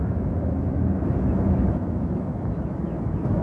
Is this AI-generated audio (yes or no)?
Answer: yes